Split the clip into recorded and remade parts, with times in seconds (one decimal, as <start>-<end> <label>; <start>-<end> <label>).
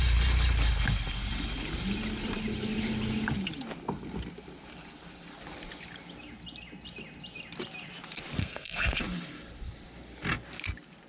0.0-8.4 recorded; 8.4-9.0 remade; 9.0-11.1 recorded